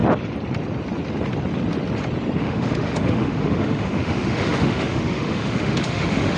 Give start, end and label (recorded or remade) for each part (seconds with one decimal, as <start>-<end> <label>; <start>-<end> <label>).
0.0-2.4 recorded; 2.4-6.4 remade

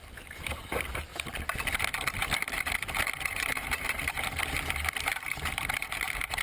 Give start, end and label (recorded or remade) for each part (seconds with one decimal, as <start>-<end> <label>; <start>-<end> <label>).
0.0-1.1 remade; 1.1-3.3 recorded; 3.3-4.4 remade; 4.4-5.1 recorded; 5.1-6.4 remade

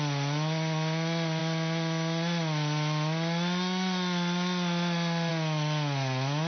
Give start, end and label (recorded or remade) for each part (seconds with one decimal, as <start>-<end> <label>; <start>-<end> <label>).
0.0-6.5 recorded

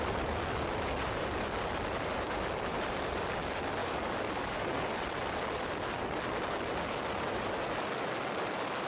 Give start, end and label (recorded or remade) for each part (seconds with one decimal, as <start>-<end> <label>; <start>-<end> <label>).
0.0-3.8 recorded; 3.8-4.7 remade; 4.7-8.9 recorded

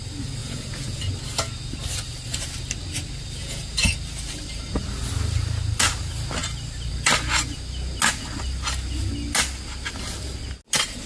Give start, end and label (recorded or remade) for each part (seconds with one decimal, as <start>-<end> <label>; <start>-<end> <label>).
0.0-0.4 recorded; 0.4-1.0 remade; 1.0-3.4 recorded; 3.4-3.9 remade; 3.9-11.1 recorded

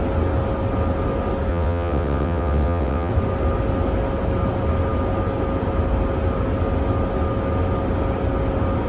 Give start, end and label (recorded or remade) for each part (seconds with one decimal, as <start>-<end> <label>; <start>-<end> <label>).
0.0-1.5 recorded; 1.5-3.1 remade; 3.1-8.9 recorded

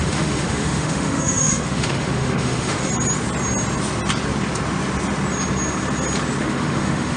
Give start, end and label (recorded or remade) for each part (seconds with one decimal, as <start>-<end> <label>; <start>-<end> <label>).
0.0-2.9 remade; 2.9-6.4 recorded; 6.4-7.2 remade

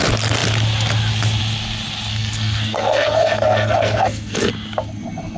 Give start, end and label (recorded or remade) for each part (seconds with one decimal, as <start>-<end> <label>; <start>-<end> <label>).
0.0-2.1 recorded; 2.1-4.5 remade; 4.5-5.4 recorded